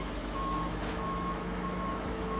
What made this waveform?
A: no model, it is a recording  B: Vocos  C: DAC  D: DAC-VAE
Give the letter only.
D